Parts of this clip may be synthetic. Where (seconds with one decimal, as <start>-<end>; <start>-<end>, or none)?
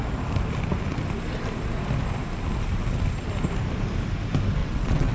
4.6-5.1